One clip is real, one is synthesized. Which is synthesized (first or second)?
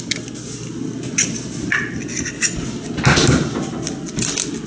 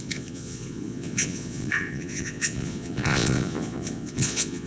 second